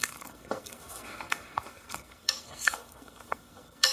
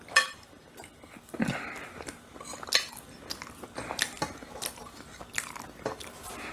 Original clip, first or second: second